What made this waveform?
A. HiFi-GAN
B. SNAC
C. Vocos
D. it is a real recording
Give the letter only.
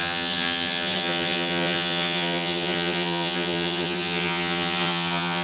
A